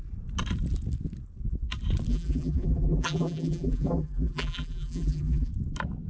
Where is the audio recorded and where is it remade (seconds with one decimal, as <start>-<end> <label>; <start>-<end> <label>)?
0.0-2.1 recorded; 2.1-5.5 remade; 5.5-6.1 recorded